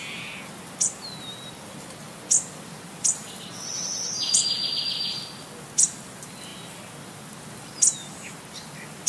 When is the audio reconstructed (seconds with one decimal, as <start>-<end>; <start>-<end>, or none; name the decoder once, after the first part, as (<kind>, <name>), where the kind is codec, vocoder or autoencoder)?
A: none

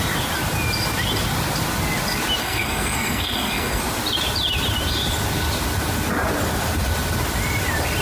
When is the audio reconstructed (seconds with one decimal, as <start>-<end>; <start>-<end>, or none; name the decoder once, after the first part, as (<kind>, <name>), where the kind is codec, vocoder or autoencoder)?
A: 2.4-3.8 (codec, SNAC)

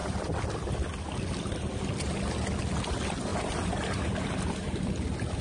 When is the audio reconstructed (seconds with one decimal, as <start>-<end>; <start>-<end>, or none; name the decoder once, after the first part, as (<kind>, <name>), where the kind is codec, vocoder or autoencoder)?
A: 3.3-4.9 (vocoder, BigVGAN v2)

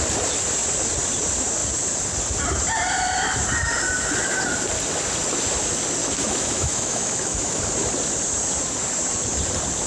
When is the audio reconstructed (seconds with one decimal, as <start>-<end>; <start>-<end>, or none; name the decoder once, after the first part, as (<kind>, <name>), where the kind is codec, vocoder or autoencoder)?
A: 6.0-7.6 (autoencoder, DAC-VAE)

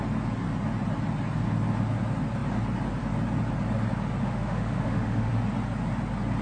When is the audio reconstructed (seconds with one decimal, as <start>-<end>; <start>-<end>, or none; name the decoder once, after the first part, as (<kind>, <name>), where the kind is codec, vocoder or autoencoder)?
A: 4.2-5.3 (autoencoder, DAC-VAE)

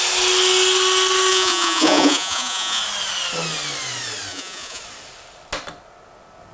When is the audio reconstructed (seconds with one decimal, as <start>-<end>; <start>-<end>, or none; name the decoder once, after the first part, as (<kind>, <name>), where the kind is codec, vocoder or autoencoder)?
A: 1.3-2.8 (vocoder, Vocos); 4.3-4.8